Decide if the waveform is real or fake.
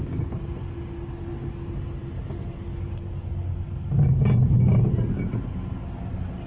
real